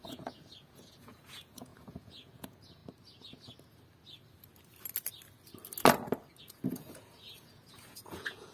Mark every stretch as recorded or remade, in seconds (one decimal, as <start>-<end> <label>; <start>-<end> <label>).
0.0-2.8 remade; 2.8-6.4 recorded; 6.4-8.5 remade